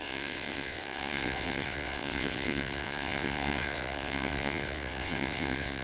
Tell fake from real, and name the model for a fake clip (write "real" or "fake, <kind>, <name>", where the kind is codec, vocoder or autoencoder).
fake, vocoder, WaveNeXt